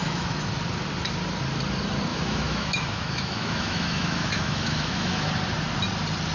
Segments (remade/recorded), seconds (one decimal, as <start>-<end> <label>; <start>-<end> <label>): 0.0-0.5 remade; 0.5-2.1 recorded; 2.1-5.3 remade; 5.3-6.3 recorded